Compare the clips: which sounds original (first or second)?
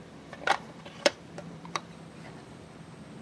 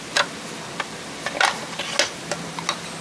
second